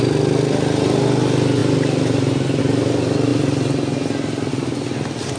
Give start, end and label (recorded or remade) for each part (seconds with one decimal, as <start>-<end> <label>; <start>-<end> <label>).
0.0-5.4 recorded